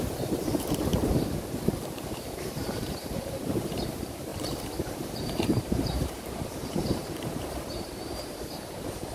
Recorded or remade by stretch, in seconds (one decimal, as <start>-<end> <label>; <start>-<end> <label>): 0.0-0.9 remade; 0.9-1.9 recorded; 1.9-4.3 remade; 4.3-5.2 recorded; 5.2-9.1 remade